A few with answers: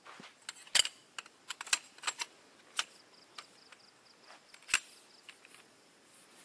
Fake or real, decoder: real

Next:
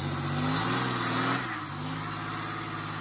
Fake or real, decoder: real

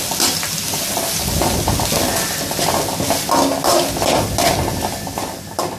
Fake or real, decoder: real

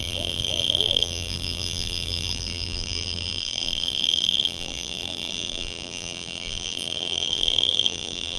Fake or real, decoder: fake, vocoder, BigVGAN v2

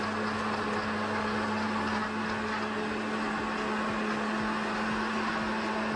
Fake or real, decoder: real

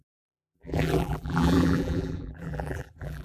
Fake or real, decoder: fake, vocoder, BigVGAN v2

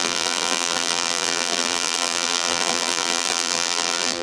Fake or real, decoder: fake, vocoder, BigVGAN v2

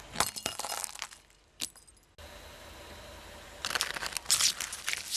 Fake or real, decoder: real